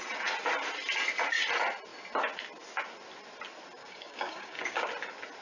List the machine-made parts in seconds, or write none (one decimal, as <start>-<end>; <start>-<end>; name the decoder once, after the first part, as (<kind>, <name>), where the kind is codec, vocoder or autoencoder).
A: 3.8-4.9 (codec, DAC)